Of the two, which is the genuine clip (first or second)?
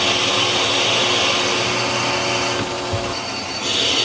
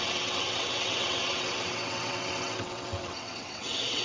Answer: first